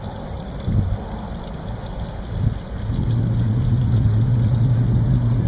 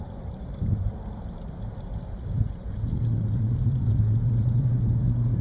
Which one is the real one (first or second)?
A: first